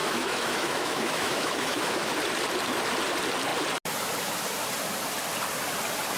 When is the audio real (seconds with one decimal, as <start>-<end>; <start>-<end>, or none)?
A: 2.1-6.2